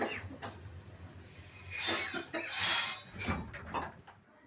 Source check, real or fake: real